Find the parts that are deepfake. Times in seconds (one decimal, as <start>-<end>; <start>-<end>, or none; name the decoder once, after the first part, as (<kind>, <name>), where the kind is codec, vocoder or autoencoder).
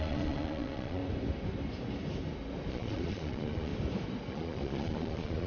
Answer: 0.0-1.0 (vocoder, Vocos); 2.7-3.7; 4.3-5.5